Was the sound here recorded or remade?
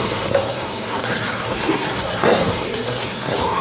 remade